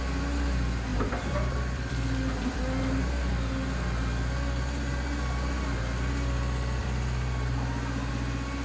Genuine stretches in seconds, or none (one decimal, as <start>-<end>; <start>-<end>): 0.0-0.9; 2.8-6.8; 8.1-8.6